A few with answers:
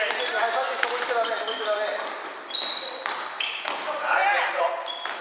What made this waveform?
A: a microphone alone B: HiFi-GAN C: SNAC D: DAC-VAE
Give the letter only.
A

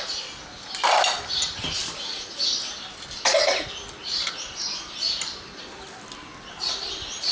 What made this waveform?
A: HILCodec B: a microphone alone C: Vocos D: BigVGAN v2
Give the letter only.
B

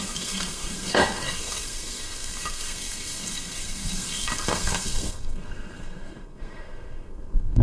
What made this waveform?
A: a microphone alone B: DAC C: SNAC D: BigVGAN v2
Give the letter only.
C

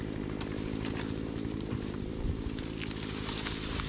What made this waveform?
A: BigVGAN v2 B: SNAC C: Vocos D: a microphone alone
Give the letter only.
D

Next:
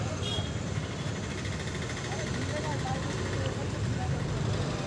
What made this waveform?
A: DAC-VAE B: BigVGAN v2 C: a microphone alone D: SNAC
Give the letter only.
B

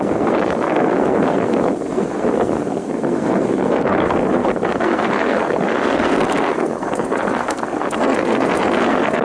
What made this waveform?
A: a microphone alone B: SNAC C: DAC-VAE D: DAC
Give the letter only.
B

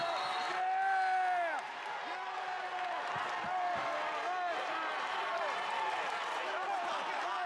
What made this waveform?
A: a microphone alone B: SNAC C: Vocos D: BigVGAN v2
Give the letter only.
A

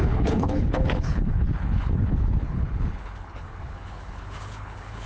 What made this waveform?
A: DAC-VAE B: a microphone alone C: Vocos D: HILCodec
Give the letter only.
D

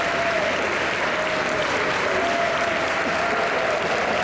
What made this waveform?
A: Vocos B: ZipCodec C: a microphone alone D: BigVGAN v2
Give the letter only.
C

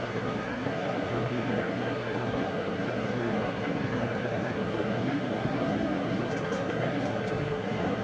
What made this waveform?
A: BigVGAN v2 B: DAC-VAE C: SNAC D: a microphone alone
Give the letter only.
C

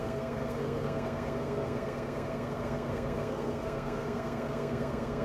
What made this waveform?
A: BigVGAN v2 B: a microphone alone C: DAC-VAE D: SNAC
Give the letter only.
D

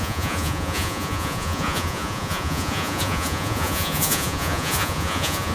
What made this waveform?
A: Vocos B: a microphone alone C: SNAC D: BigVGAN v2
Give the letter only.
A